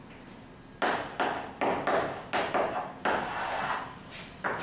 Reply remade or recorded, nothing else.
recorded